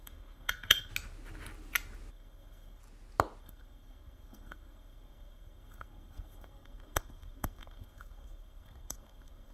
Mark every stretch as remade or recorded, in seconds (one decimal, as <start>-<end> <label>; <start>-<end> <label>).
0.0-0.9 remade; 0.9-2.1 recorded; 2.1-2.8 remade; 2.8-3.4 recorded; 3.4-9.5 remade

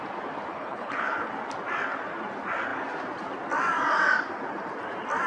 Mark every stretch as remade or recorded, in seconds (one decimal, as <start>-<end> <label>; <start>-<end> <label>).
0.0-0.5 recorded; 0.5-1.3 remade; 1.3-5.3 recorded